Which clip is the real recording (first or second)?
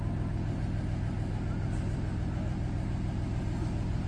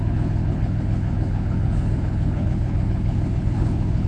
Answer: first